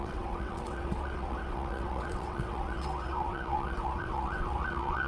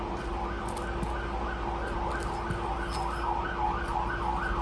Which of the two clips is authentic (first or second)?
second